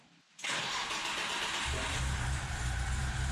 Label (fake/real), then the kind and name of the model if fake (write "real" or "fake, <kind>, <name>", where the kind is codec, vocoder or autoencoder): real